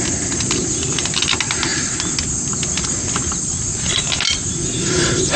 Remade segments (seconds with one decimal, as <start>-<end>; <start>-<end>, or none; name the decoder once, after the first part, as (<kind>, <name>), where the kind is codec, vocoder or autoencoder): none